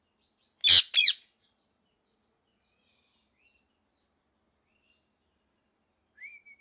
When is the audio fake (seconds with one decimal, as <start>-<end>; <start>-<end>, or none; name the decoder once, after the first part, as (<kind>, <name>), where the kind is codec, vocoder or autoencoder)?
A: 1.0-3.1 (vocoder, Vocos)